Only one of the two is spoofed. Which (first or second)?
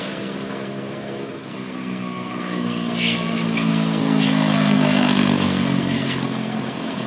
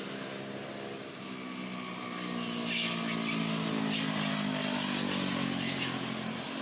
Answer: first